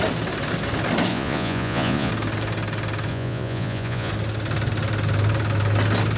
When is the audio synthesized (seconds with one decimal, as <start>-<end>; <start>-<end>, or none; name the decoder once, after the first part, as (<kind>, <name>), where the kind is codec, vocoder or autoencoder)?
1.1-2.1 (vocoder, Vocos); 3.1-4.1

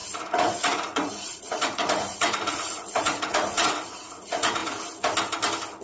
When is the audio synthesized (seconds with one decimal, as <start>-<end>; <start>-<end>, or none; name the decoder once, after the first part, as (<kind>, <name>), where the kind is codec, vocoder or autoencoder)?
0.0-4.6 (vocoder, Vocos)

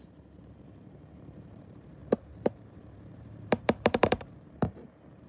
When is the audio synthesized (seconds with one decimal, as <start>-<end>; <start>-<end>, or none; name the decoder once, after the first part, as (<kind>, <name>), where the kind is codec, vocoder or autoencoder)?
0.0-2.0 (vocoder, BigVGAN v2); 2.5-5.3

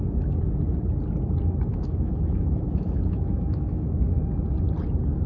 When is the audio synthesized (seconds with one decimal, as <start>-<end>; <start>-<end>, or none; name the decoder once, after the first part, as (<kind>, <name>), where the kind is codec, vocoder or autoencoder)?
1.7-4.2 (autoencoder, DAC-VAE)